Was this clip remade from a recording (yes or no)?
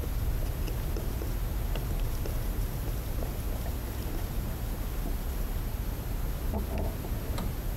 no